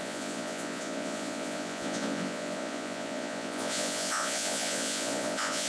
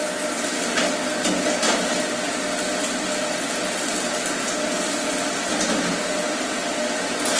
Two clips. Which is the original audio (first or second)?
second